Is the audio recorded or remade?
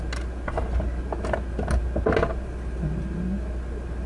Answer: recorded